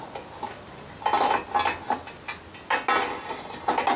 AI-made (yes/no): no